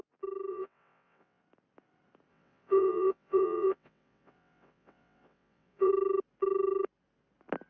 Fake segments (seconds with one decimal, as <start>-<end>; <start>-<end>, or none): 0.5-1.4; 2.3-5.9